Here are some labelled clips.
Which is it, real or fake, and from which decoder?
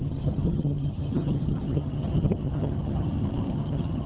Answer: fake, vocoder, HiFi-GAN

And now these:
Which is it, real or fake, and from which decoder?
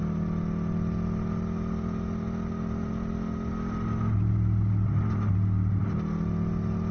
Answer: real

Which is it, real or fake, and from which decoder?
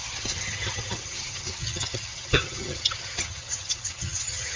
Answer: fake, vocoder, HiFi-GAN